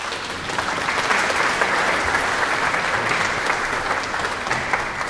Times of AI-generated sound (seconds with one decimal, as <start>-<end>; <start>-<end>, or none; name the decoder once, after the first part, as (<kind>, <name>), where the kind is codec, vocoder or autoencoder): 1.1-1.8 (vocoder, BigVGAN v2)